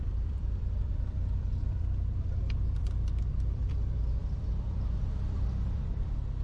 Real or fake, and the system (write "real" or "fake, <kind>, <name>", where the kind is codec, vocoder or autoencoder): fake, vocoder, BigVGAN v2